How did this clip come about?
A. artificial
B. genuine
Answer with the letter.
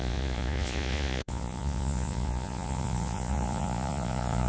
A